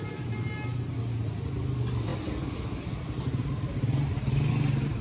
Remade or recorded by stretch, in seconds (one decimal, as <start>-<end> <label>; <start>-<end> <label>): 0.0-5.0 recorded